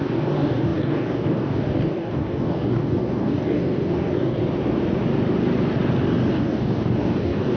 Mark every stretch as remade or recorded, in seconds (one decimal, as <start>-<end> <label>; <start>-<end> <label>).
0.0-4.4 remade; 4.4-6.3 recorded; 6.3-7.6 remade

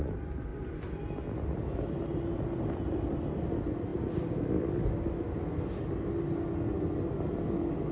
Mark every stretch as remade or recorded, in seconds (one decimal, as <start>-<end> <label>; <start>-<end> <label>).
0.0-7.9 recorded